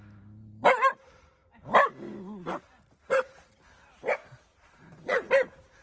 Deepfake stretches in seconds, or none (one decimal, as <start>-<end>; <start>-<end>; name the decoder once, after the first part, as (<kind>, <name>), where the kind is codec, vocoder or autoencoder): 4.5-5.3 (vocoder, Vocos)